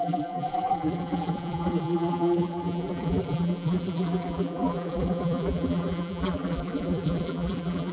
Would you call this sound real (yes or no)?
no